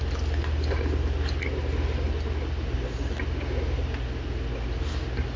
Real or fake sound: real